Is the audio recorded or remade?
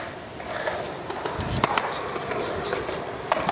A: recorded